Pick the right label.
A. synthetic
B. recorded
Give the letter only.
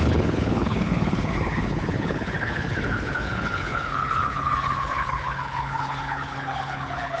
A